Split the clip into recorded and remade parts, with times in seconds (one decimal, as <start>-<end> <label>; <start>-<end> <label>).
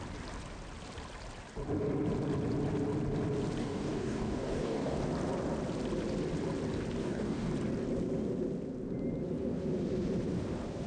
0.0-3.6 recorded; 3.6-5.0 remade; 5.0-7.0 recorded; 7.0-7.5 remade; 7.5-10.9 recorded